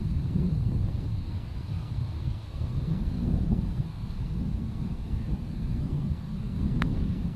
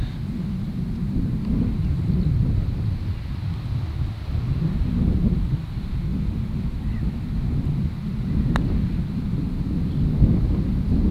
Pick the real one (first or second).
second